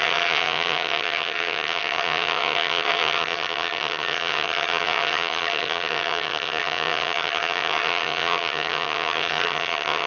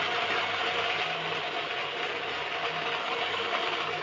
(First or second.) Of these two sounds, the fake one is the first